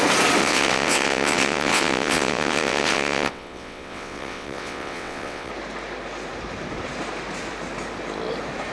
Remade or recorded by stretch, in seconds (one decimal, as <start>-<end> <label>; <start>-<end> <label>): 0.0-0.4 recorded; 0.4-5.5 remade; 5.5-8.7 recorded